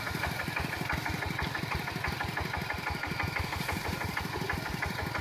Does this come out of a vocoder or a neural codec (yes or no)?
yes